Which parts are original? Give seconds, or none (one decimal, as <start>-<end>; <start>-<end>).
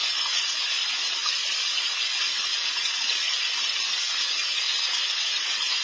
0.0-5.8